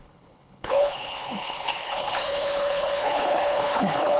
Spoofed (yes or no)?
yes